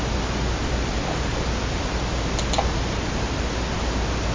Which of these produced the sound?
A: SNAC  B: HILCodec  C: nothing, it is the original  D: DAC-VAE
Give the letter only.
C